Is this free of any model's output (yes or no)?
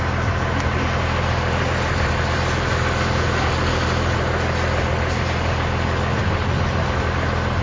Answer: yes